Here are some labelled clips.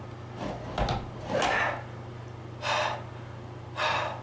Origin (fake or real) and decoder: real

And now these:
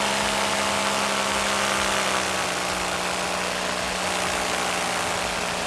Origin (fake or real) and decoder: real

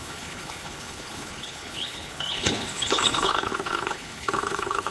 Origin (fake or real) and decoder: fake, codec, HILCodec